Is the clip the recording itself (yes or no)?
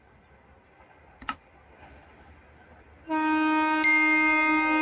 yes